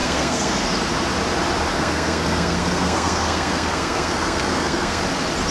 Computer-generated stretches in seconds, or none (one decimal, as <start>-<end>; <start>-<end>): 0.0-0.7; 1.7-5.0